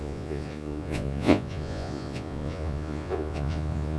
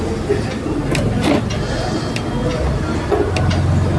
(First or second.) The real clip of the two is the second